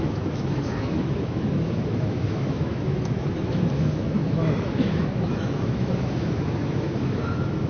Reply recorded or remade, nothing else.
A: remade